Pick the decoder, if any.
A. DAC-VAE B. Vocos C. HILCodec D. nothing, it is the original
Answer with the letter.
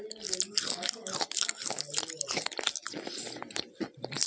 D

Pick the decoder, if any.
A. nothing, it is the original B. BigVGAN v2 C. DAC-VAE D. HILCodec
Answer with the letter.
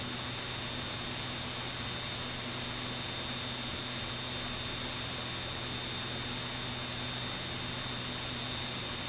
A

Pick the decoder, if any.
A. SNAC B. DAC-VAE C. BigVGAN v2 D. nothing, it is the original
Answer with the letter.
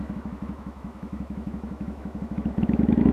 B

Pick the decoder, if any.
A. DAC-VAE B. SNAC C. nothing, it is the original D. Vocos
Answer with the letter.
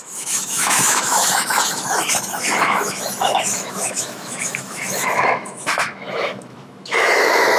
A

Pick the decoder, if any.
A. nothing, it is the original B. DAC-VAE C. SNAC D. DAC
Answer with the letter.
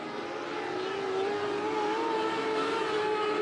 A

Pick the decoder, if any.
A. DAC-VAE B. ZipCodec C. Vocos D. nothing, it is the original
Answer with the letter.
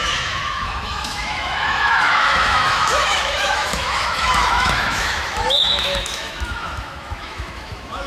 A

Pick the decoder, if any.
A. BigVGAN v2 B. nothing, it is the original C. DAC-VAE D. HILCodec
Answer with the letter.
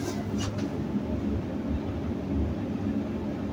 B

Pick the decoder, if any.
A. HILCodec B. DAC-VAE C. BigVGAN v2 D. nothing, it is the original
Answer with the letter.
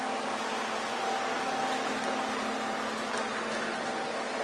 D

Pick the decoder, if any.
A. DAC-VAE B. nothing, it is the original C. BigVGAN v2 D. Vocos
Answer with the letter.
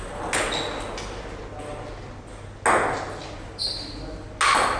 B